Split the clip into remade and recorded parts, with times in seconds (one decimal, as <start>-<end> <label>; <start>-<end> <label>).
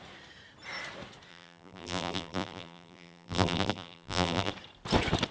0.0-1.3 recorded; 1.3-4.5 remade; 4.5-5.3 recorded